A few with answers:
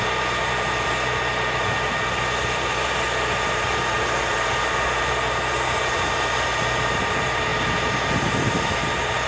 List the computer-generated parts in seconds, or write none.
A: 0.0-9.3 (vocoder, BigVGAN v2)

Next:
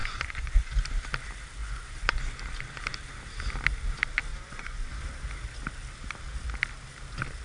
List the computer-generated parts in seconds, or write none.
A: 0.0-0.7 (vocoder, Vocos); 1.6-2.2; 4.3-4.9

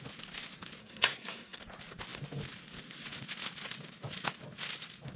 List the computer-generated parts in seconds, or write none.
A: 0.8-1.6 (codec, SNAC)

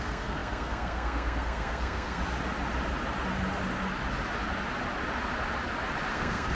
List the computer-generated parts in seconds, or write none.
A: 0.0-2.2 (codec, SNAC); 6.1-6.5

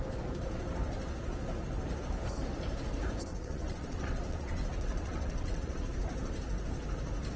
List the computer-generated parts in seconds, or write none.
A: 3.3-5.8 (vocoder, WaveNeXt)